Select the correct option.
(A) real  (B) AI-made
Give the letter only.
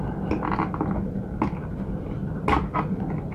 A